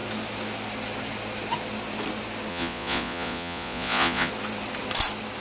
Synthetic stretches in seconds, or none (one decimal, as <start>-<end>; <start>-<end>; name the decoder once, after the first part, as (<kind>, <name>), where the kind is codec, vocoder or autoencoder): 2.5-4.3 (vocoder, Vocos)